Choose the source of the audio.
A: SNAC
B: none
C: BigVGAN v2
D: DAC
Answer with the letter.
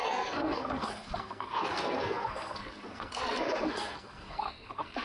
A